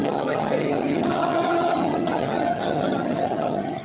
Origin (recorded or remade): remade